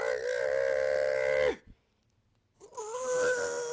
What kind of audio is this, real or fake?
real